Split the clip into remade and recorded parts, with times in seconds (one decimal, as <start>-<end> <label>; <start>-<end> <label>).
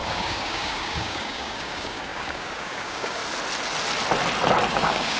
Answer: 0.0-3.2 remade; 3.2-4.7 recorded; 4.7-5.2 remade